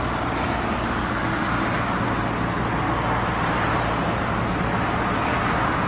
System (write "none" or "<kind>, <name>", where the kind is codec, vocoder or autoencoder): none